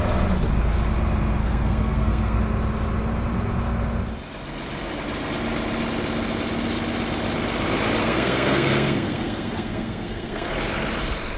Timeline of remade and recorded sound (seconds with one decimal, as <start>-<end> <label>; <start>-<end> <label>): 0.0-1.4 recorded; 1.4-2.4 remade; 2.4-8.0 recorded; 8.0-10.5 remade; 10.5-11.4 recorded